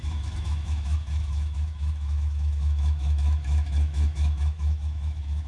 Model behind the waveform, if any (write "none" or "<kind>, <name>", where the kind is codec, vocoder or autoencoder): autoencoder, DAC-VAE